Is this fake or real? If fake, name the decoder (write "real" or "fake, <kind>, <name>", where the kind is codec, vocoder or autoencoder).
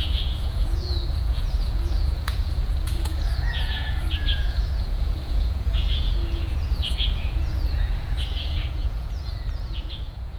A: fake, vocoder, Vocos